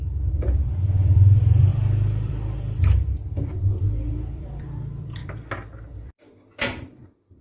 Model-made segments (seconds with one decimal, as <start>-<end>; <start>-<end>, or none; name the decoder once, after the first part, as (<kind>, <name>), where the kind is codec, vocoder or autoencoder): 0.0-5.2 (vocoder, BigVGAN v2); 5.9-7.4